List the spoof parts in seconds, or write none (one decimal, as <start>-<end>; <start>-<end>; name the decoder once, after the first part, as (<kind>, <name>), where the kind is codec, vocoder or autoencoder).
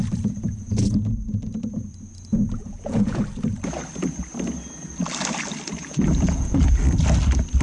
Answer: 2.6-3.2 (vocoder, Vocos); 5.8-6.8